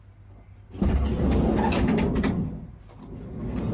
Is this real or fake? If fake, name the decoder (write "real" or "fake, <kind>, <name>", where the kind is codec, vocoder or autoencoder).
real